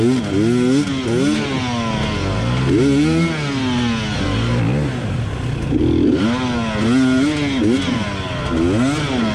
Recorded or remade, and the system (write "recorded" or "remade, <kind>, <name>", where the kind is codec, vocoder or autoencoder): recorded